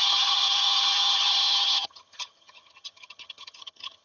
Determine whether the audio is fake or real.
fake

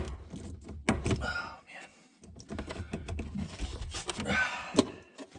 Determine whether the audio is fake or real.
real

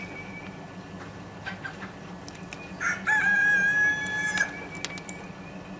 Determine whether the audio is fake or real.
real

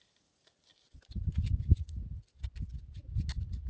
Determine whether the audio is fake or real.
real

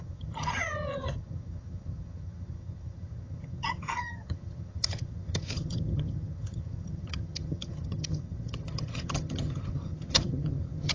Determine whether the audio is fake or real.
fake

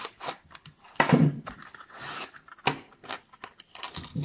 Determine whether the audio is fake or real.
real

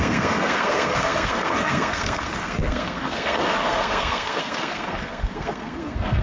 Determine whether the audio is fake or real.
fake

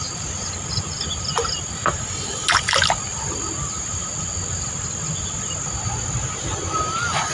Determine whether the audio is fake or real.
real